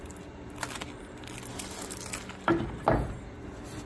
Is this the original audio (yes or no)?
yes